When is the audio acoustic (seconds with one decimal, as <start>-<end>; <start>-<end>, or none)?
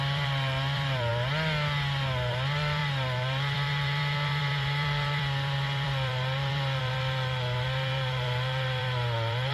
1.1-2.3